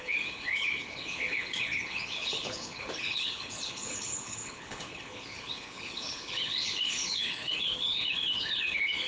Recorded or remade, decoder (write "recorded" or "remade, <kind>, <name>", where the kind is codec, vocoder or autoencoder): remade, codec, HILCodec